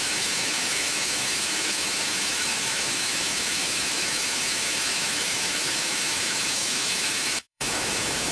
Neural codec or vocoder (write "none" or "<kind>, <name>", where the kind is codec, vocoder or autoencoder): autoencoder, DAC-VAE